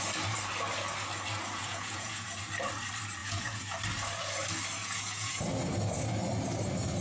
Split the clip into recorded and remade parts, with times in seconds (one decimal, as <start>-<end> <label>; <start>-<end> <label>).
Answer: 0.0-1.6 recorded; 1.6-2.4 remade; 2.4-3.2 recorded; 3.2-3.8 remade; 3.8-4.8 recorded; 4.8-5.4 remade; 5.4-7.0 recorded